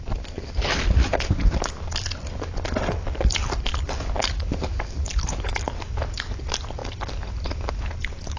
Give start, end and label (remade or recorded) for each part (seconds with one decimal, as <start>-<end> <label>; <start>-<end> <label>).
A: 0.0-8.4 recorded